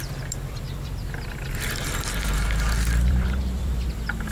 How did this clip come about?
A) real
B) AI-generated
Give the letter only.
B